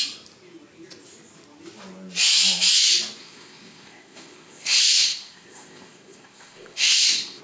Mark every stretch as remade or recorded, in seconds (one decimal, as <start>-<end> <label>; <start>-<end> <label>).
0.0-3.2 recorded; 3.2-7.4 remade